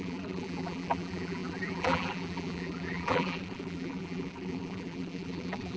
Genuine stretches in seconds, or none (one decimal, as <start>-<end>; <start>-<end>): none